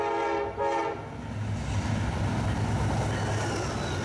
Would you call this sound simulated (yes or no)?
no